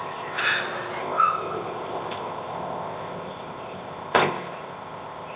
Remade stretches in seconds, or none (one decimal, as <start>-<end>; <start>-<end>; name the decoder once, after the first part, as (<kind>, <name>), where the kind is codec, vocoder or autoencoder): 0.0-0.4 (codec, ZipCodec); 1.0-5.4